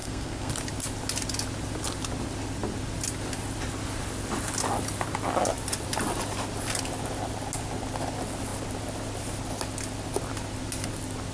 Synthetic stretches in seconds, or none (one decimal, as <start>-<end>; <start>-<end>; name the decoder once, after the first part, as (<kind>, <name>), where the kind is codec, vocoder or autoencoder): 0.0-0.5 (codec, SNAC)